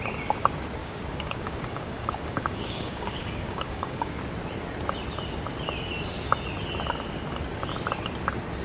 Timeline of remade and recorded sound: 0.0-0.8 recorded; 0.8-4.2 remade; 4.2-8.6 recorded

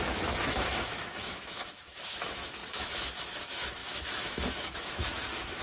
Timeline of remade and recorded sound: 0.0-5.6 remade

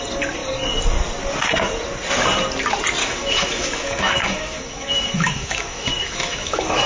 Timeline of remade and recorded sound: 0.0-3.0 recorded; 3.0-6.9 remade

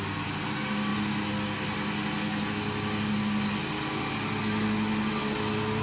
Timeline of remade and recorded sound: 0.0-5.8 recorded

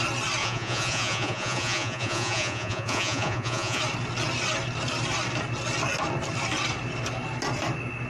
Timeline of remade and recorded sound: 0.0-0.4 recorded; 0.4-3.8 remade; 3.8-8.1 recorded

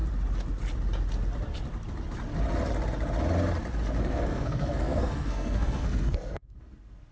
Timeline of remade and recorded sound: 0.0-4.0 recorded; 4.0-7.1 remade